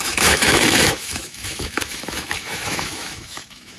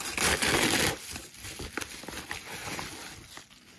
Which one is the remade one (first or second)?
first